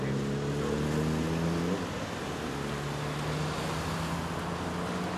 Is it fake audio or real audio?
real